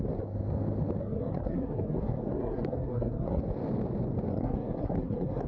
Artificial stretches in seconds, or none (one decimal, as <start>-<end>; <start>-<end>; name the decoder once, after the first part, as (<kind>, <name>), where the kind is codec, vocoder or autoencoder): 1.0-3.4 (codec, SNAC); 4.3-5.5